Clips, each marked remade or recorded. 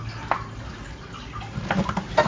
recorded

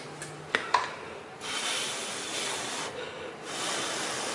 recorded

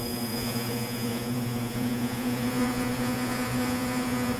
remade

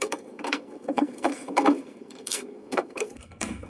remade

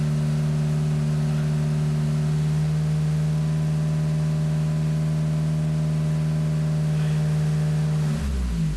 recorded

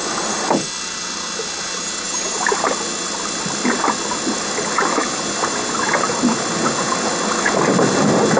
recorded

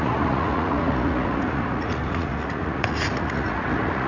remade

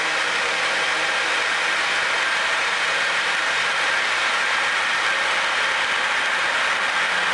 recorded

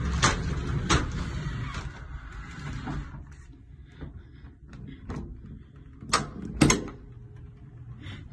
recorded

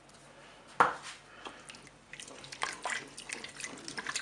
recorded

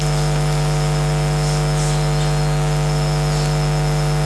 recorded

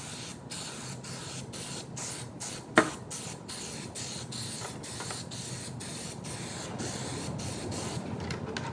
recorded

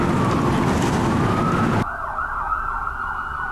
recorded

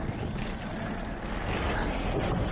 recorded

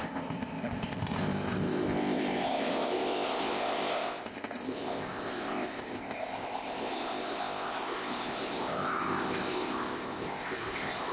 remade